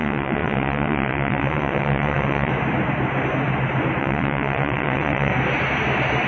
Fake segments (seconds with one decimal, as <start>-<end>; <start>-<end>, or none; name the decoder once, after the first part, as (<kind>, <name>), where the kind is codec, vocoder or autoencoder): 0.0-2.5 (vocoder, WaveNeXt); 4.0-5.3